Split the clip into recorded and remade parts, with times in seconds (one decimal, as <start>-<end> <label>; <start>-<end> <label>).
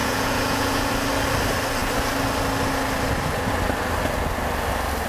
0.0-0.9 remade; 0.9-5.1 recorded